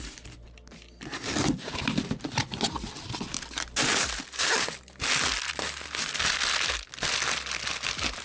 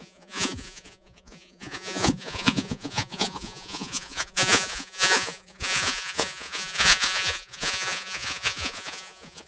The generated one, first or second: second